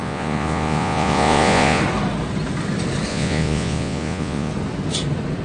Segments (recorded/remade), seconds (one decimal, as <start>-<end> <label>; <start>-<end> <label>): 0.0-1.8 remade; 1.8-3.1 recorded; 3.1-4.5 remade; 4.5-5.4 recorded